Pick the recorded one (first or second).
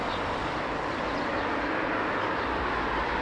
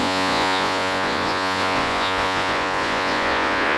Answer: first